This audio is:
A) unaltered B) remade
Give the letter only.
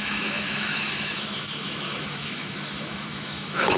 B